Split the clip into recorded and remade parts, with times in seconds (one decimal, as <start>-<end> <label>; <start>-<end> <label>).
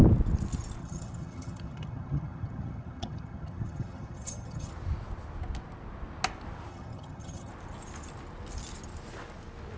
0.0-0.8 recorded; 0.8-4.7 remade; 4.7-6.7 recorded; 6.7-7.5 remade; 7.5-9.8 recorded